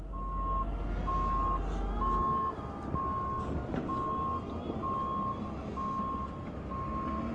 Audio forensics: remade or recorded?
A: recorded